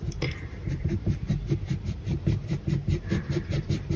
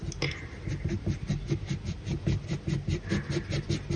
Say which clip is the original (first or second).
second